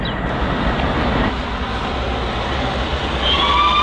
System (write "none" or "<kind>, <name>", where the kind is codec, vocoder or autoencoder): none